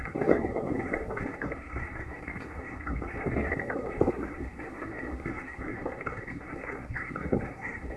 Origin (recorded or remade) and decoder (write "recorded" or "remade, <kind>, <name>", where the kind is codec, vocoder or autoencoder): remade, codec, SNAC